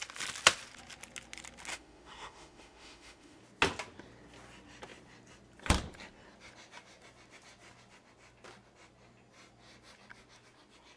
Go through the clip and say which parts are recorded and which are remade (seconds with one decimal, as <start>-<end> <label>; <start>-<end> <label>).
0.0-1.7 recorded; 1.7-3.4 remade; 3.4-11.0 recorded